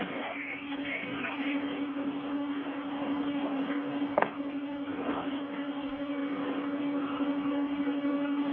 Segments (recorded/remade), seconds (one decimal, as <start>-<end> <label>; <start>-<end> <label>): 0.0-8.5 remade

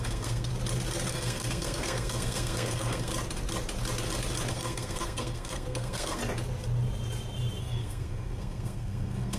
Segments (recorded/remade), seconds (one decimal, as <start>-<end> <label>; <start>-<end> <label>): 0.0-0.5 remade; 0.5-1.1 recorded; 1.1-3.1 remade; 3.1-4.5 recorded; 4.5-6.2 remade; 6.2-7.6 recorded; 7.6-9.4 remade

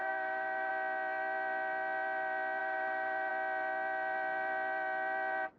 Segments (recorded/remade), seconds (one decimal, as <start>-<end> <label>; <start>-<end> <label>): 0.0-0.7 remade; 0.7-2.6 recorded; 2.6-3.3 remade; 3.3-5.6 recorded

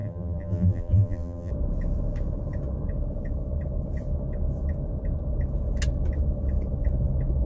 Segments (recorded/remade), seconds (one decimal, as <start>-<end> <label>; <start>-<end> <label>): 0.0-1.5 remade; 1.5-7.4 recorded

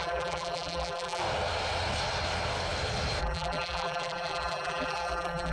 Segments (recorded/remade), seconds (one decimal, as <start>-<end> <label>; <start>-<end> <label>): 0.0-1.2 remade; 1.2-3.2 recorded; 3.2-5.5 remade

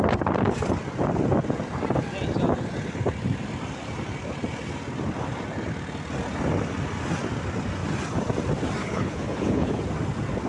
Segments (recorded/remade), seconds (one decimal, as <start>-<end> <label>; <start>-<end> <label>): 0.0-8.8 recorded; 8.8-9.8 remade; 9.8-10.5 recorded

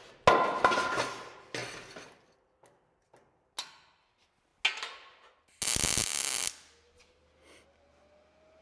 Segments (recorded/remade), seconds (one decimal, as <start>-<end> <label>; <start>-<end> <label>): 0.0-8.6 recorded